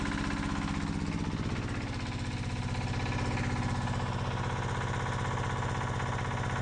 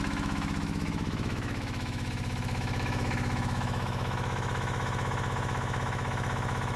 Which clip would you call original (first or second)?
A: first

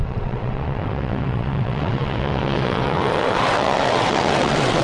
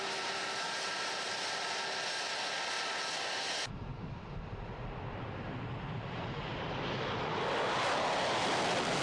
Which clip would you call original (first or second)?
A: second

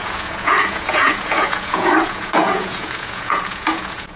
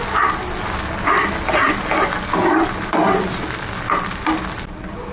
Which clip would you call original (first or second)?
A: second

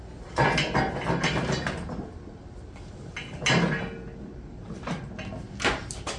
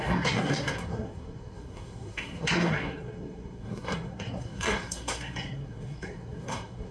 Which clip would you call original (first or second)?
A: first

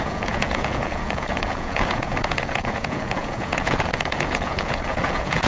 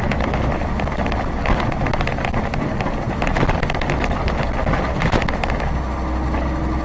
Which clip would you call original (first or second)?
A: second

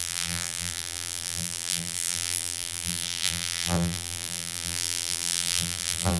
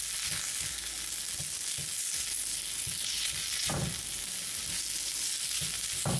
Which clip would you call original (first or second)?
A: second